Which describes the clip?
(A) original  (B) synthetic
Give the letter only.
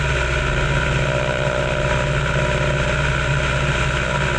A